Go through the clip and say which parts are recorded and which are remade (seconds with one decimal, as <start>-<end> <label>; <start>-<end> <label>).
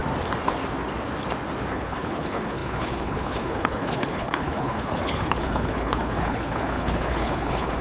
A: 0.0-1.7 recorded; 1.7-7.8 remade